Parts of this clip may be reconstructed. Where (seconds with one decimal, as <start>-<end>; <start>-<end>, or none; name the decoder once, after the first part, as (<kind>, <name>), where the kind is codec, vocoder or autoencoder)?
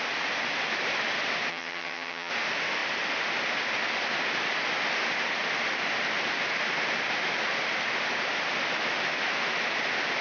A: 1.5-2.3 (vocoder, HiFi-GAN)